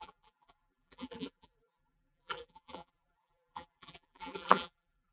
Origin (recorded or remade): remade